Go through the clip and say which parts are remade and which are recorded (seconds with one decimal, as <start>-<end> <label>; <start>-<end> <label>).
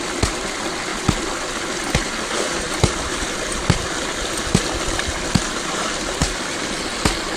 0.0-7.4 recorded